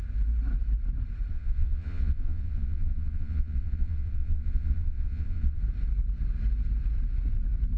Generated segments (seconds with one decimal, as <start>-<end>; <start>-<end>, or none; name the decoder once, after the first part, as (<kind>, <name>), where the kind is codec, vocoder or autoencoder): 1.3-5.6 (vocoder, Vocos)